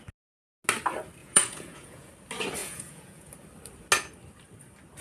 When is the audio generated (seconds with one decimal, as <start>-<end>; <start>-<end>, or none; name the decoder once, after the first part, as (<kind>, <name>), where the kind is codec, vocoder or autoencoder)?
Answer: 1.2-2.1 (vocoder, Vocos); 2.6-3.3